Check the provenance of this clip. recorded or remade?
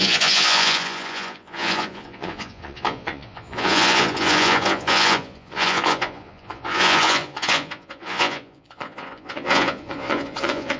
remade